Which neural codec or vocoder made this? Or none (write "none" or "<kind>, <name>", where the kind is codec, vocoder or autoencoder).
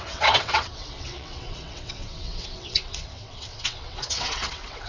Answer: vocoder, WaveNeXt